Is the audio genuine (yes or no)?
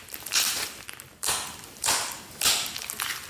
yes